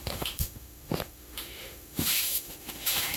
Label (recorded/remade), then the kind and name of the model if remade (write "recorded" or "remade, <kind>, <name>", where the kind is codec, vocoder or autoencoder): remade, autoencoder, DAC-VAE